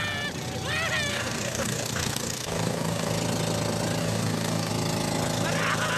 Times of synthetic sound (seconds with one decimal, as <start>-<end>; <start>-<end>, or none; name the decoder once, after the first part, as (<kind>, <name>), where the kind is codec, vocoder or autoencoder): 1.1-3.1 (codec, DAC); 4.0-4.7